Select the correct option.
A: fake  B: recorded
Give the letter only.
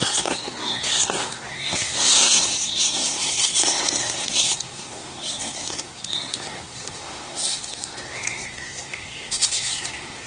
A